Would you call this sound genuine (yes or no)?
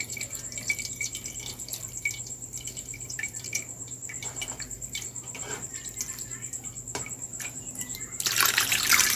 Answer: no